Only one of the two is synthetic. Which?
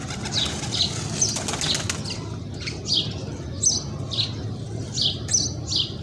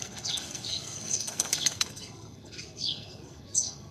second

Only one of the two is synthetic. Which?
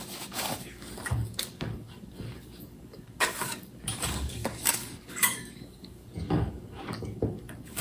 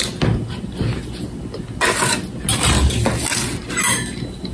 first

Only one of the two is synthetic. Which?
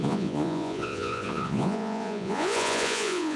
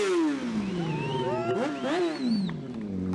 first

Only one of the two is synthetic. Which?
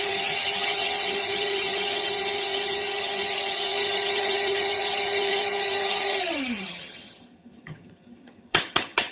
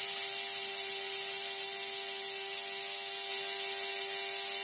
first